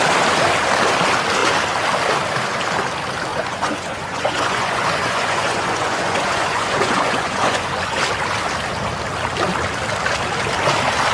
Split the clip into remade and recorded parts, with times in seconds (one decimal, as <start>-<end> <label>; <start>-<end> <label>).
0.0-3.3 recorded; 3.3-8.0 remade; 8.0-11.1 recorded